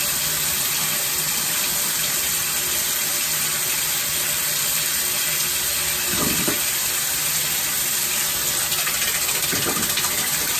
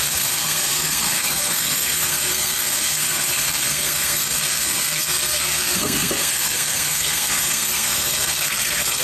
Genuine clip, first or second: first